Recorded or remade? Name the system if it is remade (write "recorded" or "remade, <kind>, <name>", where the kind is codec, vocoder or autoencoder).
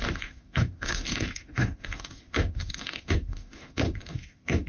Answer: remade, autoencoder, DAC-VAE